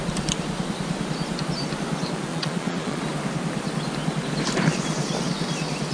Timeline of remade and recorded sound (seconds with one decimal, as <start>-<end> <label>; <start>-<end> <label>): 0.0-2.3 recorded; 2.3-3.0 remade; 3.0-5.9 recorded